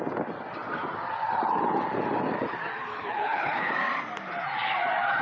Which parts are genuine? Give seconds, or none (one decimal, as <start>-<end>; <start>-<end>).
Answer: 0.0-2.9; 3.7-5.2